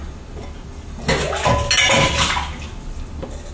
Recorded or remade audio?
recorded